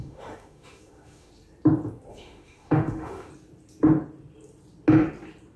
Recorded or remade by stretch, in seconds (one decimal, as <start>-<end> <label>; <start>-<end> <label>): 0.0-1.3 remade; 1.3-2.1 recorded; 2.1-3.3 remade; 3.3-5.6 recorded